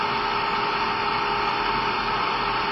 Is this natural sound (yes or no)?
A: yes